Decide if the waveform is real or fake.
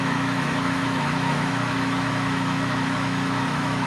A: fake